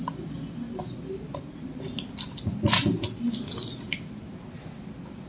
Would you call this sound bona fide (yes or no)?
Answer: yes